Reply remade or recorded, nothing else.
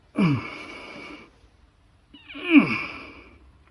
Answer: recorded